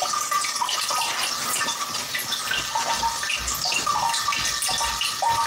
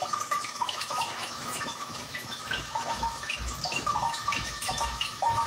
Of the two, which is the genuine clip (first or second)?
first